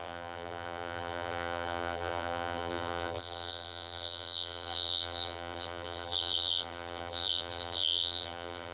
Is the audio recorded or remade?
remade